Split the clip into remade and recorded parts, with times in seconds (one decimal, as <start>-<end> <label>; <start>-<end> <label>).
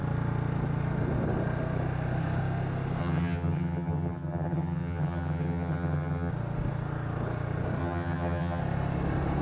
0.0-3.0 recorded; 3.0-6.3 remade; 6.3-7.8 recorded; 7.8-8.6 remade; 8.6-9.4 recorded